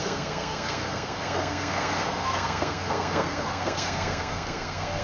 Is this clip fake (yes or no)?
yes